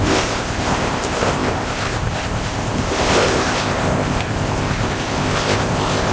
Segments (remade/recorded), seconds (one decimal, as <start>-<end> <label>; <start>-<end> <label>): 0.0-6.1 remade